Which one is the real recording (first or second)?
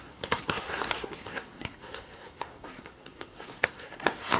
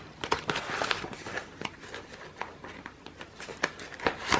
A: second